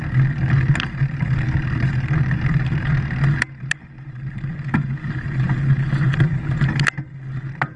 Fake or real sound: real